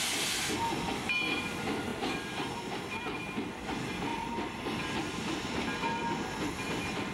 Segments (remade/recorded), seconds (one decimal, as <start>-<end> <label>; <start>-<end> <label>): 0.0-1.9 recorded; 1.9-2.6 remade; 2.6-4.1 recorded; 4.1-5.5 remade; 5.5-7.1 recorded